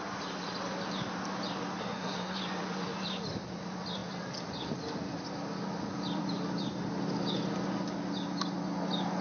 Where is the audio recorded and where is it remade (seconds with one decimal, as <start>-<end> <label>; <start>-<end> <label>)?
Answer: 0.0-1.8 recorded; 1.8-2.4 remade; 2.4-9.2 recorded